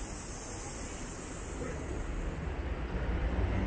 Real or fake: real